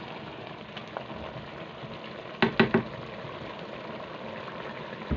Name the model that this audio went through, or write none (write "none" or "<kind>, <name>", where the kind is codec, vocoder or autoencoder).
none